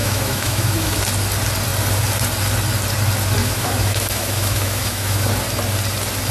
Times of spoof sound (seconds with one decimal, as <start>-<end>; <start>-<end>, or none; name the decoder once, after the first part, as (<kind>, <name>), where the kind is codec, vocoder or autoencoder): 0.0-1.0 (autoencoder, DAC-VAE); 3.4-5.3